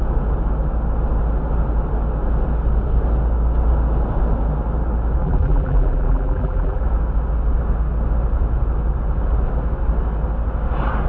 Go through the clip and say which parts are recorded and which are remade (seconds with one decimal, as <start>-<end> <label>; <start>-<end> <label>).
0.0-5.2 recorded; 5.2-6.8 remade; 6.8-11.1 recorded